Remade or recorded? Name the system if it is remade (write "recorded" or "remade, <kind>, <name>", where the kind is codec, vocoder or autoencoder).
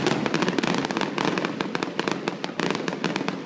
recorded